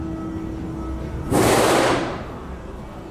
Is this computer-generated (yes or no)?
no